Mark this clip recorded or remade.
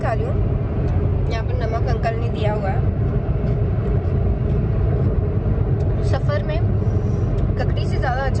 recorded